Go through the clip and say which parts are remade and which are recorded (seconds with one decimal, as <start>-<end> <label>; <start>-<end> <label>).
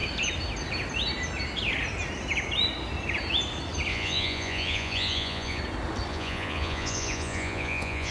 0.0-3.9 recorded; 3.9-5.6 remade; 5.6-6.1 recorded; 6.1-8.1 remade